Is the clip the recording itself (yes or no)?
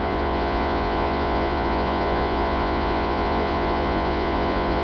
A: no